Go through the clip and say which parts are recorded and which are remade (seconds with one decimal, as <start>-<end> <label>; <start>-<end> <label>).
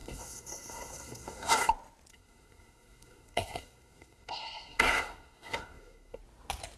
0.0-1.7 remade; 1.7-2.1 recorded; 2.1-6.2 remade; 6.2-6.8 recorded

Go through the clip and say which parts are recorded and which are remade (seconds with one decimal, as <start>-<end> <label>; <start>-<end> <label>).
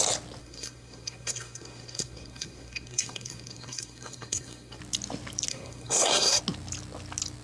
0.0-0.4 recorded; 0.4-4.8 remade; 4.8-5.5 recorded; 5.5-6.4 remade; 6.4-7.4 recorded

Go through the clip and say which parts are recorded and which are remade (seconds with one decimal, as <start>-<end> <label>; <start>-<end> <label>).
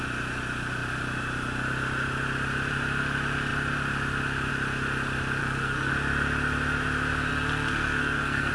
0.0-5.4 recorded; 5.4-5.9 remade; 5.9-7.3 recorded; 7.3-8.5 remade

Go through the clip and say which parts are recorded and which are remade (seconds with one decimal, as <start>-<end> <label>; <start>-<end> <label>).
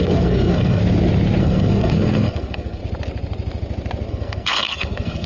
0.0-0.8 remade; 0.8-1.4 recorded; 1.4-2.8 remade; 2.8-4.1 recorded; 4.1-5.3 remade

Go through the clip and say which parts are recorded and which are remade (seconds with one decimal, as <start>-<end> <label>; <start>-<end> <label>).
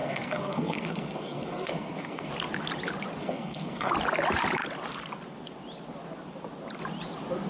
0.0-2.3 remade; 2.3-3.2 recorded; 3.2-3.9 remade; 3.9-7.5 recorded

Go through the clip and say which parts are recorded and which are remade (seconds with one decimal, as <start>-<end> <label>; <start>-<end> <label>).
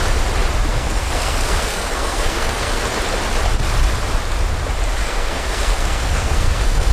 0.0-0.7 recorded; 0.7-2.8 remade; 2.8-5.0 recorded; 5.0-6.9 remade